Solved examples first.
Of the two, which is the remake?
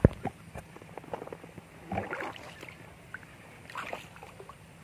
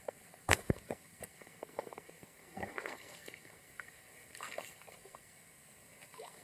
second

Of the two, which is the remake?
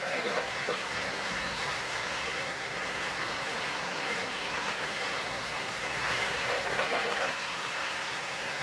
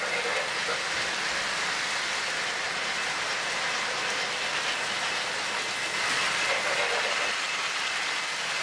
first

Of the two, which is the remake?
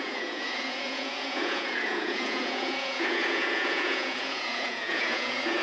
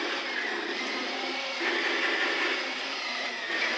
first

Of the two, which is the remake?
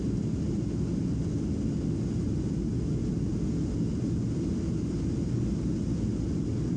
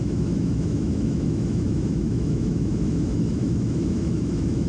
second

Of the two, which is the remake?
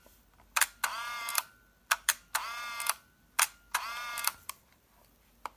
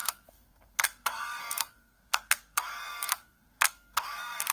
second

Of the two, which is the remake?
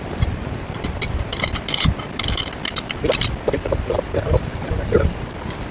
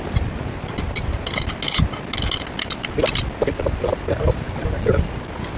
first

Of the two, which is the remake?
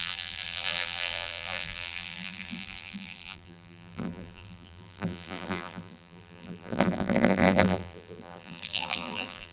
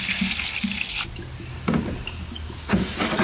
first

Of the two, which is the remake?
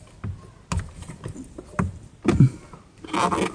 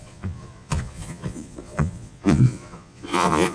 second